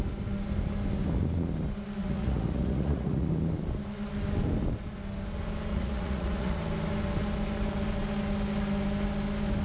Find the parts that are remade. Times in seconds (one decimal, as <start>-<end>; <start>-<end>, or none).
2.0-3.3; 5.7-6.6